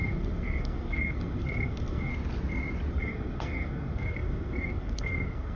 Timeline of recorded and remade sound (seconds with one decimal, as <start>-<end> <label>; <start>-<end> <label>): 0.0-2.1 remade; 2.1-2.9 recorded; 2.9-5.5 remade